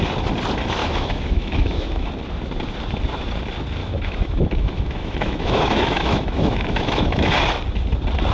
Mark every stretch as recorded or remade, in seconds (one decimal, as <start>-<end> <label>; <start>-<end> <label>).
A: 0.0-0.8 recorded; 0.8-2.1 remade; 2.1-3.8 recorded; 3.8-7.3 remade; 7.3-8.3 recorded